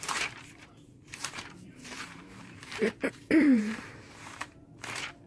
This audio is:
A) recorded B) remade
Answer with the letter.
B